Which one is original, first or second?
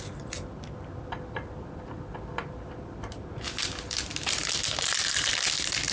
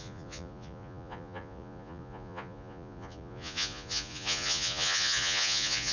first